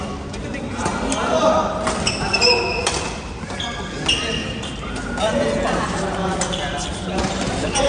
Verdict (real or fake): real